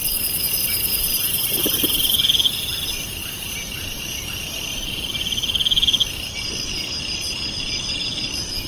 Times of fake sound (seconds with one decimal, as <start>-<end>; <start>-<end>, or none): 1.0-2.1; 3.2-4.0